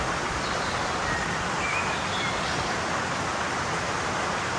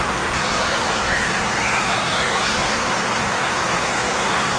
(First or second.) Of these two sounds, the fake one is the second